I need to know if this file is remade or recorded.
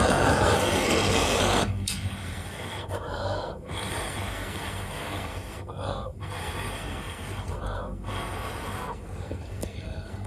remade